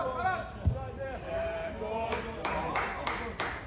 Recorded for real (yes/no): yes